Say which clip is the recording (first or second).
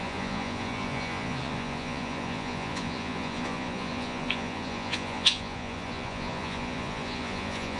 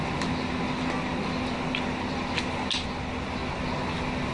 second